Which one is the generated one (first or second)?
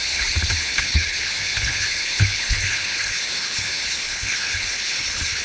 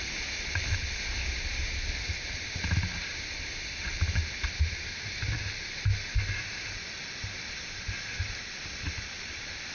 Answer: first